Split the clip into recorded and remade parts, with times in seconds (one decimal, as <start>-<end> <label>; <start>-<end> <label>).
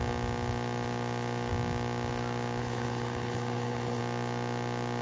0.0-2.6 recorded; 2.6-4.0 remade; 4.0-5.0 recorded